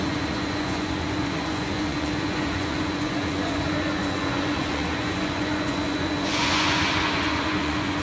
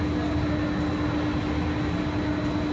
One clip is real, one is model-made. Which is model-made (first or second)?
first